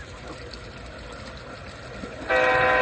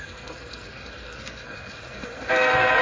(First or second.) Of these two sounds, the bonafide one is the first